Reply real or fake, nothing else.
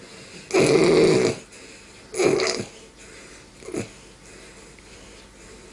real